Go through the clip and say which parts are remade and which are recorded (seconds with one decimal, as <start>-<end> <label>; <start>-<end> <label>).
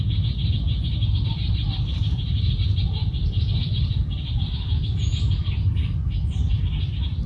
0.0-7.3 recorded